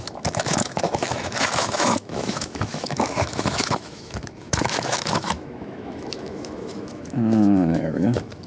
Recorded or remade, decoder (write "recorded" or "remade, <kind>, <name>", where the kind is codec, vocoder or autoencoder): remade, autoencoder, DAC-VAE